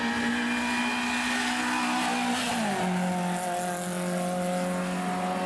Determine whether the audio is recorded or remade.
recorded